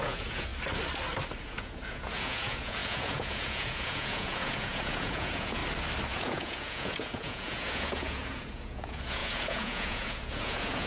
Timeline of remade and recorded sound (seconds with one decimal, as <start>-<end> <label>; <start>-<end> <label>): 0.0-0.5 remade; 0.5-1.4 recorded; 1.4-5.6 remade; 5.6-6.1 recorded; 6.1-10.9 remade